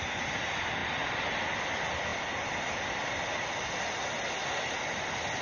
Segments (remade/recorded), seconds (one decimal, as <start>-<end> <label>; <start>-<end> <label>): 0.0-5.4 recorded